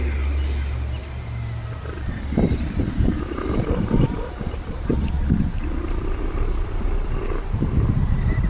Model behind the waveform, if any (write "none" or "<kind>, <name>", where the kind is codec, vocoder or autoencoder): vocoder, BigVGAN v2